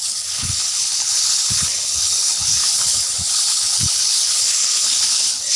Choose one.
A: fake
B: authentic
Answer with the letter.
A